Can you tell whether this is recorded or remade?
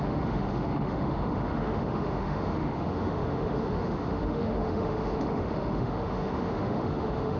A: remade